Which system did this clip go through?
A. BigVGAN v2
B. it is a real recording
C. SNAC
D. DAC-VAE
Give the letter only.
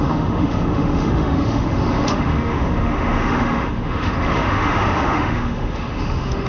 D